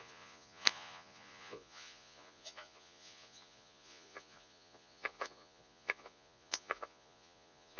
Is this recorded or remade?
remade